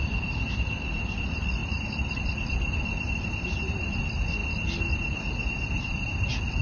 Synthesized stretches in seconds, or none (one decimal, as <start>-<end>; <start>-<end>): 0.0-4.4; 4.9-6.6